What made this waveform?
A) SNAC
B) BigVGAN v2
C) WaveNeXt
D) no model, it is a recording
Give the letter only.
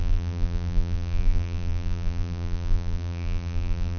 B